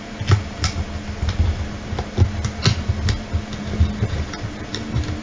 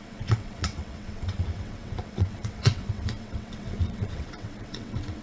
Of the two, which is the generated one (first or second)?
second